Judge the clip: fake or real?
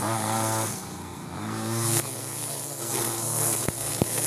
fake